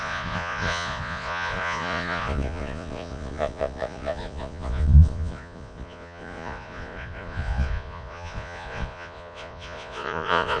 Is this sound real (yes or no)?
no